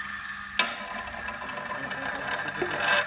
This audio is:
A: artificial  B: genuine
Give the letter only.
B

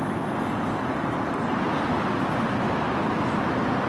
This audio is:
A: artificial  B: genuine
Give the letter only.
B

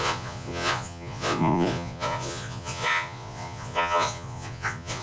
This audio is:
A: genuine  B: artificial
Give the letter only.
B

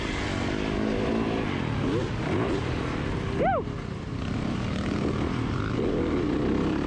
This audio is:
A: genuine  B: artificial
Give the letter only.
A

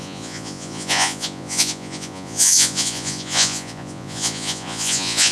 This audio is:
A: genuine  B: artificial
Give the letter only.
B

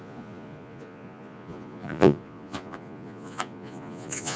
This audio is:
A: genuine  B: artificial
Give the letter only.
B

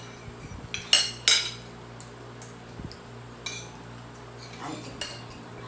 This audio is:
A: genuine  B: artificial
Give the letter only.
A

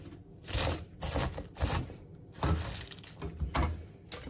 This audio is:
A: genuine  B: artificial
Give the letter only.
A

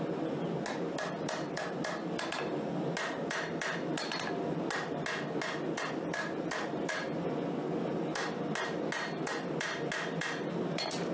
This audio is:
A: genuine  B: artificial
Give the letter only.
A